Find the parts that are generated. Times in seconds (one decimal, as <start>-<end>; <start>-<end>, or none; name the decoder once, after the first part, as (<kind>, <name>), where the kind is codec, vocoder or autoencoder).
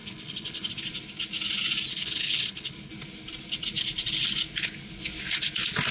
0.0-0.7 (codec, HILCodec); 1.9-2.9